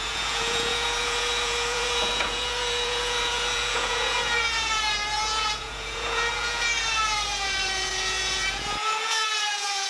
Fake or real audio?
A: fake